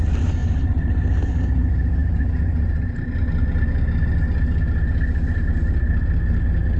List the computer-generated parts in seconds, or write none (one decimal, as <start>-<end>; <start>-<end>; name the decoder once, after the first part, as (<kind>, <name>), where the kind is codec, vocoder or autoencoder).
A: none